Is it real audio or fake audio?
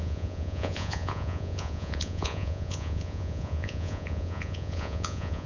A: fake